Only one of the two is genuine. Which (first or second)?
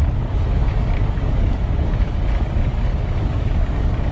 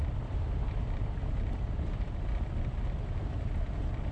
second